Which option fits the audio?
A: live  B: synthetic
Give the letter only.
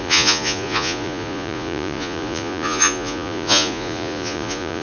B